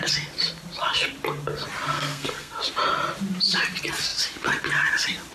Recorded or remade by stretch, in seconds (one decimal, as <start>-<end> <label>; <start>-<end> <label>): 0.0-1.9 recorded; 1.9-2.6 remade; 2.6-5.3 recorded